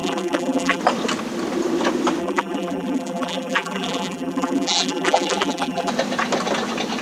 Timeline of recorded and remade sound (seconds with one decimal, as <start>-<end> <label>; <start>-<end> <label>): 0.0-0.8 remade; 0.8-2.2 recorded; 2.2-5.9 remade; 5.9-7.0 recorded